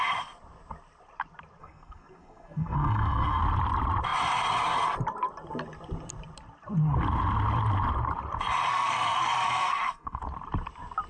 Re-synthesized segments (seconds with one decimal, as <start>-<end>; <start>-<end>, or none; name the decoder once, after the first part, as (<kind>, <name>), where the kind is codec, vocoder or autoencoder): 1.6-3.4 (codec, SNAC); 8.7-10.2